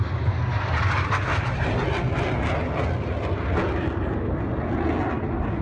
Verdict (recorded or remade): recorded